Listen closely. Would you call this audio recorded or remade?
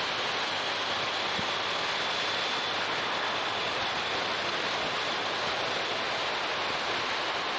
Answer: recorded